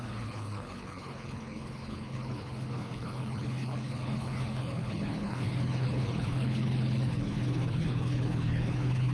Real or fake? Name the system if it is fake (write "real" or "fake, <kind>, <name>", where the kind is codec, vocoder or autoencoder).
fake, codec, HILCodec